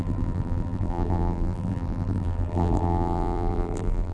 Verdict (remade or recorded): remade